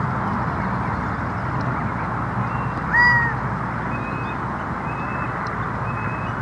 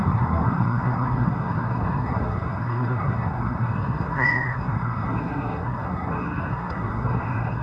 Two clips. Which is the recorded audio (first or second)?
first